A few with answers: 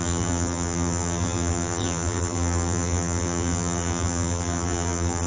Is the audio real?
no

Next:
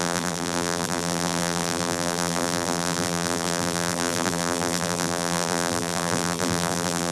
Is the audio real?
no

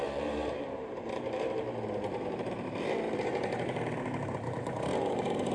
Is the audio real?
no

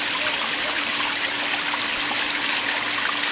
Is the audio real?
no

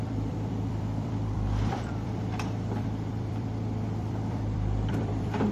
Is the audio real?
no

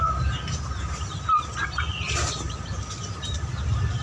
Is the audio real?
no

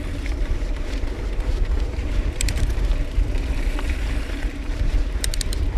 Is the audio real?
no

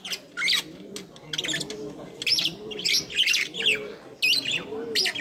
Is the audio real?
yes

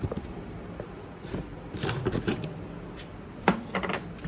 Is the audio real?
no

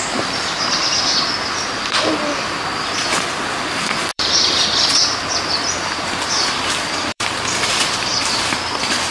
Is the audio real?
no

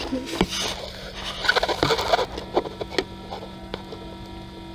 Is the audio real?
yes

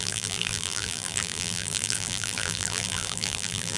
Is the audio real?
no